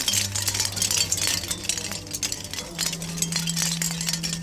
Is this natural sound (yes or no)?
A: yes